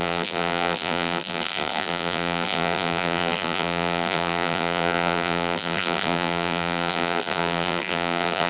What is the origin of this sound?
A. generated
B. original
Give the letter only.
A